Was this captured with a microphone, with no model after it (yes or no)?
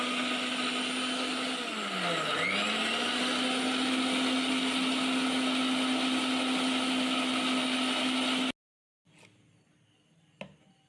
yes